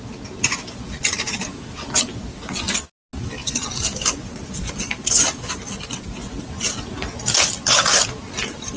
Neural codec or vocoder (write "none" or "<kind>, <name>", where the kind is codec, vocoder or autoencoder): none